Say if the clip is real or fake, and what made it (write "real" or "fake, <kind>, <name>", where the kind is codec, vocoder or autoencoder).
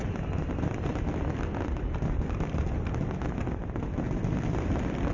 real